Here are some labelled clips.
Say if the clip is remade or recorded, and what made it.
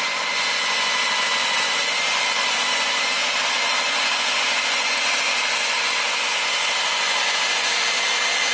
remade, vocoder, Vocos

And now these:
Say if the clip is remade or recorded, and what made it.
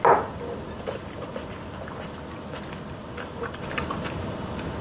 recorded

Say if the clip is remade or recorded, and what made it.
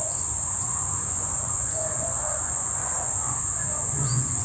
remade, vocoder, Vocos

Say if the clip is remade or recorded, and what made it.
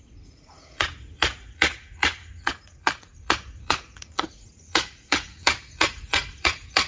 remade, vocoder, Vocos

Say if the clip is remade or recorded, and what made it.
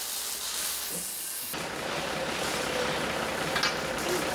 recorded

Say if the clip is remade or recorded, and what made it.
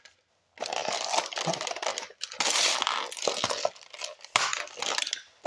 recorded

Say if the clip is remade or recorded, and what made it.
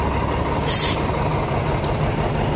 recorded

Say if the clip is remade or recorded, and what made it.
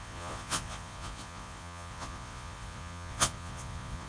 remade, vocoder, Vocos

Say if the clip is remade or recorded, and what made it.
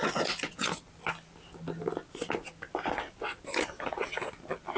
recorded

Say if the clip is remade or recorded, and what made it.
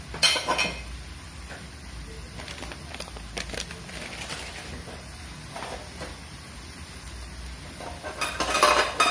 recorded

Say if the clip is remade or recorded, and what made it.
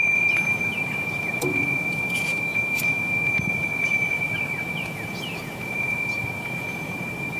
remade, vocoder, Vocos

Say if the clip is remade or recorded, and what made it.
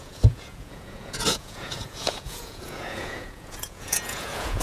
remade, vocoder, Vocos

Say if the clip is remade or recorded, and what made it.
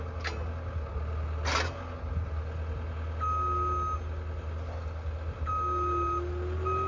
recorded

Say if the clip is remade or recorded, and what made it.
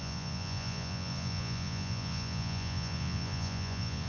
remade, vocoder, Vocos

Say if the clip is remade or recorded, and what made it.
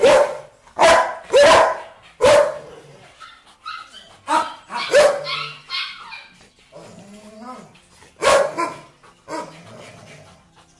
recorded